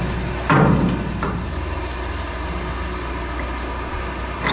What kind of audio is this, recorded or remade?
recorded